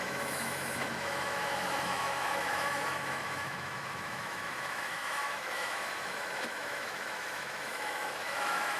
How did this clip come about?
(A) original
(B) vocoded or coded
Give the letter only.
B